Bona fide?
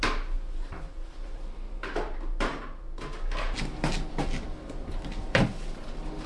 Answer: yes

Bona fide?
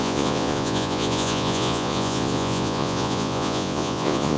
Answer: no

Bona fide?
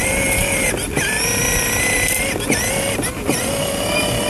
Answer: yes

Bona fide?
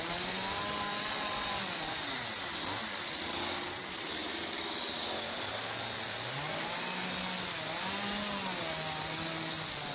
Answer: yes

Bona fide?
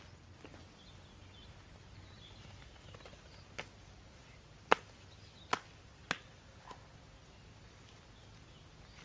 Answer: yes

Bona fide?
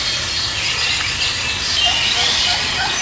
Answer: yes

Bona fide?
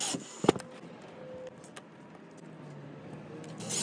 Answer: yes